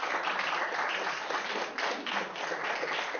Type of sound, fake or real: real